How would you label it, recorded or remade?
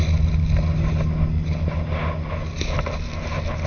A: recorded